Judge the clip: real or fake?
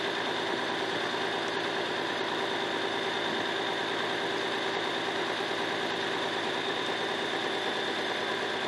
real